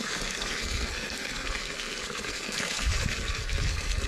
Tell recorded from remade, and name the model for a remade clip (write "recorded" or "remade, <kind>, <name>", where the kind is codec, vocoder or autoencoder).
remade, codec, SNAC